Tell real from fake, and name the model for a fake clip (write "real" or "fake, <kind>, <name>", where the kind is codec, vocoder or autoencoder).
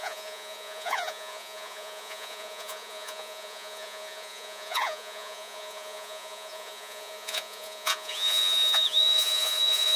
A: fake, vocoder, Vocos